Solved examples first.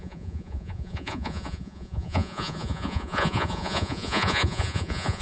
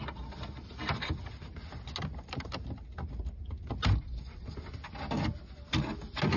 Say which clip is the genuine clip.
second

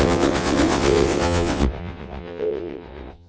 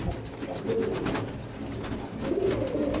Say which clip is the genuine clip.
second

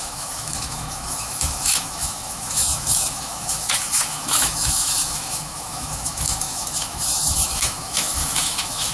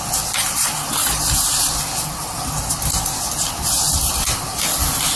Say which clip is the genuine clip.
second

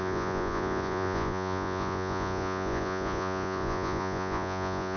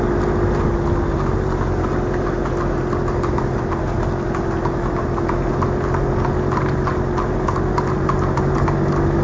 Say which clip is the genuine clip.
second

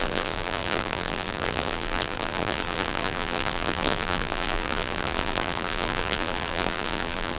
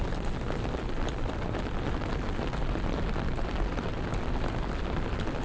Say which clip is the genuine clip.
second